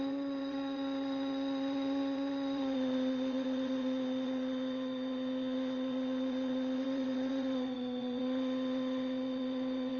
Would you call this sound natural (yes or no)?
no